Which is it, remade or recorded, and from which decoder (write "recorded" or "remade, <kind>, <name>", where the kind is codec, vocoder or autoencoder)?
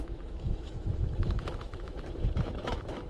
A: remade, autoencoder, DAC-VAE